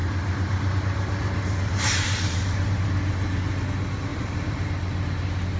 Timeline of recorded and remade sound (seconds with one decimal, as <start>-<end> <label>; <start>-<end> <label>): 0.0-1.7 recorded; 1.7-2.9 remade; 2.9-4.1 recorded; 4.1-4.7 remade; 4.7-5.6 recorded

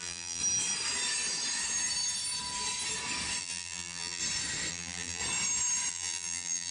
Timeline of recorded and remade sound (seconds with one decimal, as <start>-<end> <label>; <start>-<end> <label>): 0.0-0.4 remade; 0.4-3.4 recorded; 3.4-4.2 remade; 4.2-4.7 recorded; 4.7-5.2 remade; 5.2-5.9 recorded; 5.9-6.7 remade